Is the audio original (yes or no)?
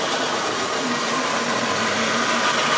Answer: yes